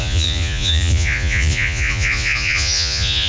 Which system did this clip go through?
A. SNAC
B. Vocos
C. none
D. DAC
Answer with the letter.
B